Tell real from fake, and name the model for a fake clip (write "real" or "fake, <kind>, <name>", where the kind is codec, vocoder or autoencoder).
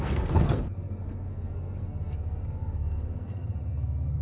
fake, codec, SNAC